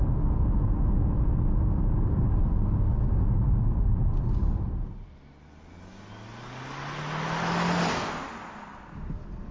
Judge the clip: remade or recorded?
recorded